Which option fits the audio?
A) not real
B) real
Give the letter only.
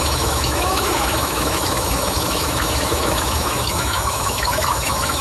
A